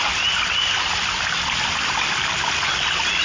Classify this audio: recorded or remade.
recorded